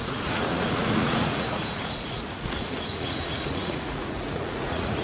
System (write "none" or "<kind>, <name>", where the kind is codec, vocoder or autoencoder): vocoder, Vocos